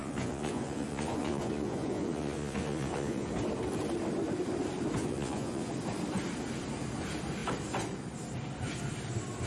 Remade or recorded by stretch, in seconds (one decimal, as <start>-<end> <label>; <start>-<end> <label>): 0.0-3.3 remade; 3.3-5.0 recorded; 5.0-5.7 remade; 5.7-9.5 recorded